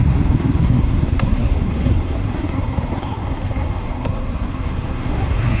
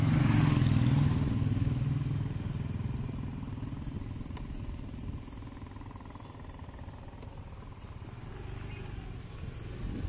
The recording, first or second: second